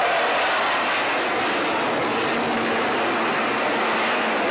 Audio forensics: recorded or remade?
recorded